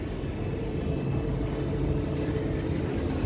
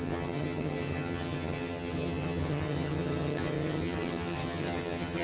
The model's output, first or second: second